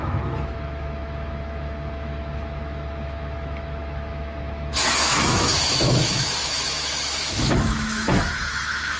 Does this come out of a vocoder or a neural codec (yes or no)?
yes